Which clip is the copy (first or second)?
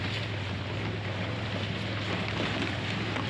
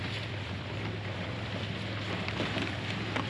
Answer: second